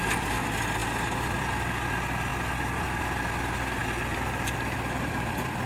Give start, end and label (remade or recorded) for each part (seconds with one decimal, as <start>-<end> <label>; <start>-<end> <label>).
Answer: 0.0-5.7 recorded